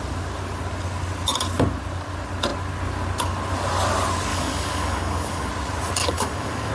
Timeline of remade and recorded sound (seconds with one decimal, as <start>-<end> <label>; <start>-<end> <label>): 0.0-4.3 recorded; 4.3-5.5 remade; 5.5-6.0 recorded; 6.0-6.7 remade